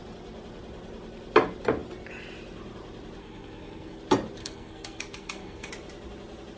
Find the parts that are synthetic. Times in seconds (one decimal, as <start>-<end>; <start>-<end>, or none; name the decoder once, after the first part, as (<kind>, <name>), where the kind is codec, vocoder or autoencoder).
3.2-4.0 (codec, SNAC); 4.4-5.7